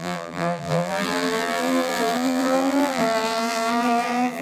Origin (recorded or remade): remade